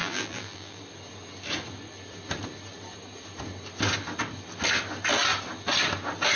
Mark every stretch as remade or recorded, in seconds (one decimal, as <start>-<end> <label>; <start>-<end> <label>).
0.0-0.8 remade; 0.8-6.4 recorded